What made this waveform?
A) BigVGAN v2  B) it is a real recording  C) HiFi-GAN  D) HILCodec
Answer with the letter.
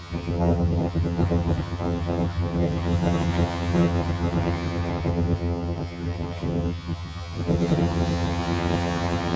C